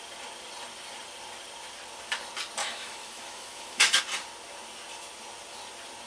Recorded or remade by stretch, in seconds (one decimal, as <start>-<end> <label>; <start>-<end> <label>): 0.0-2.6 recorded; 2.6-4.0 remade; 4.0-6.1 recorded